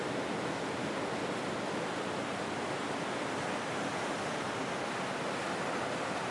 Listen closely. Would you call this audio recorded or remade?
recorded